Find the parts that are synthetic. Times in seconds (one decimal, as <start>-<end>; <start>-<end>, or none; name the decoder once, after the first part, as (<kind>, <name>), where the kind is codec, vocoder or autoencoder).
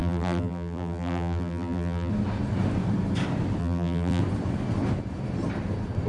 0.0-2.1 (vocoder, BigVGAN v2); 3.6-4.2